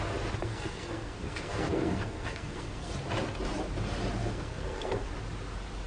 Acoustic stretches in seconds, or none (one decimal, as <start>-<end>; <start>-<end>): 0.0-0.4; 2.9-4.2; 5.1-5.9